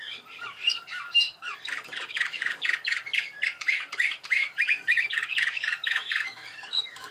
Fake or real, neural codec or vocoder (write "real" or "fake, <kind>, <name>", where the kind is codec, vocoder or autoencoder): fake, codec, DAC